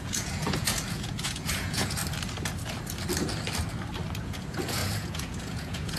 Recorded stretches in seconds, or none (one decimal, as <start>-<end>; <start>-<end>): 2.0-4.2